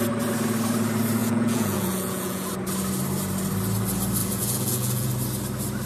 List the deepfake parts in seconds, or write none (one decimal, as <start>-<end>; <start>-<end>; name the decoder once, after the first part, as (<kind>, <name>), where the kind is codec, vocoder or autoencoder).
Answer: 1.2-2.5 (vocoder, Vocos); 4.2-5.1